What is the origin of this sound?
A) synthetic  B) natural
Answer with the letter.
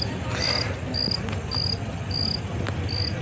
B